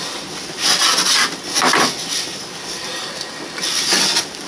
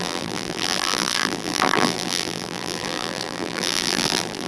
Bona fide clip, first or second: first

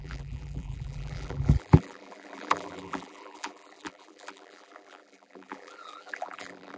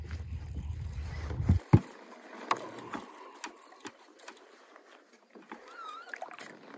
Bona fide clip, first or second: second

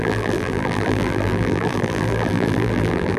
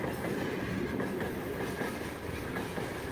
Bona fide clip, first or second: second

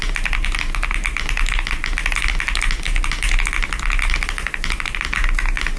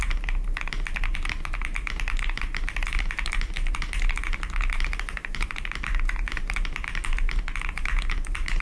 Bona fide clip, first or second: first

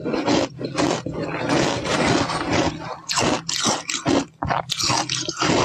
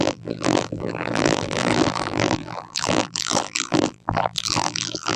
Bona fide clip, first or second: first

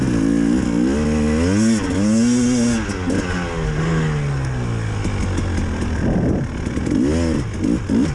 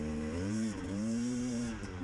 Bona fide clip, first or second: first